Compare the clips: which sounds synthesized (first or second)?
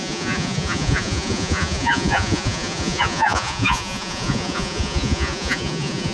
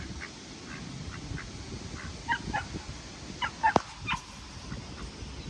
first